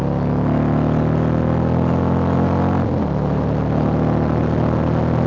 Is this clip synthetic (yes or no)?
no